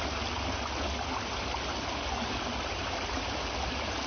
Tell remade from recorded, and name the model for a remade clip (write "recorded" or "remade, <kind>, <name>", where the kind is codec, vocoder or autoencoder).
recorded